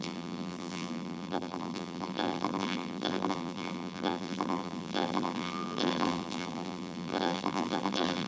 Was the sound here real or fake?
fake